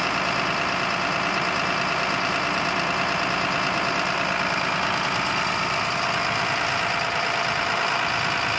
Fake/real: real